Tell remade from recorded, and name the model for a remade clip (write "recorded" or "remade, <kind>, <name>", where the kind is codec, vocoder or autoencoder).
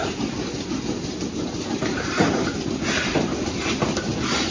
recorded